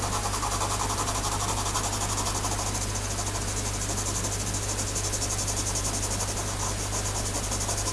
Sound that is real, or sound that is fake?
real